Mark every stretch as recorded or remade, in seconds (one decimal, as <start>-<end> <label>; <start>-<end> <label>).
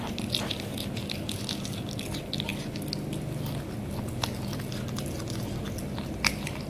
0.0-6.7 recorded